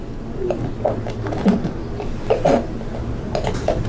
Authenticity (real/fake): real